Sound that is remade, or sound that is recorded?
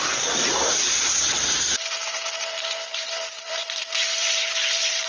remade